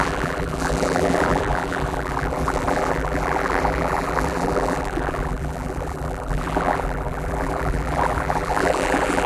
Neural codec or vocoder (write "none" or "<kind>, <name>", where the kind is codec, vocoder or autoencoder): vocoder, BigVGAN v2